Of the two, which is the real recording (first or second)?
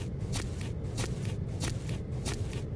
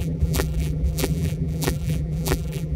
first